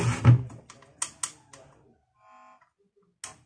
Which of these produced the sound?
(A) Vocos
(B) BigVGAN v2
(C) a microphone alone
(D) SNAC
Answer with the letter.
C